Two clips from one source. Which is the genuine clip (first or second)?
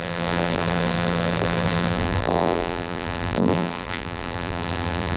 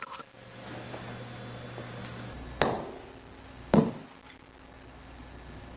second